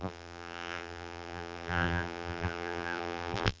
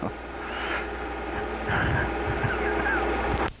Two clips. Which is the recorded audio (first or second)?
second